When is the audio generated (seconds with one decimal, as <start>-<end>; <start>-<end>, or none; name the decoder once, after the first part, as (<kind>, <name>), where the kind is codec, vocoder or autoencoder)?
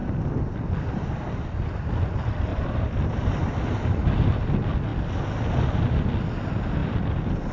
0.0-0.6 (vocoder, BigVGAN v2); 2.5-4.1; 6.8-7.5